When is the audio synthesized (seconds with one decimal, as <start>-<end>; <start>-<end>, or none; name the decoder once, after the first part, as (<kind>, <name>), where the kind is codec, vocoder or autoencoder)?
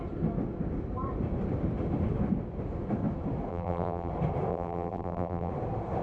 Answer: 3.5-4.1 (vocoder, BigVGAN v2); 4.5-5.5